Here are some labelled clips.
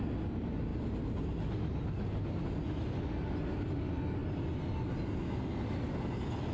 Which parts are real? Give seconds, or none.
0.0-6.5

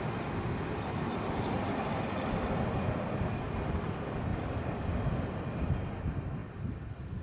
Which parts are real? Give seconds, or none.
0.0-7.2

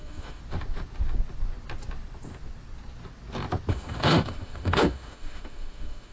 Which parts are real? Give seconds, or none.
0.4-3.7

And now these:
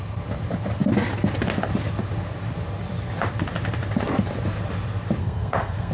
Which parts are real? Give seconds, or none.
0.0-5.2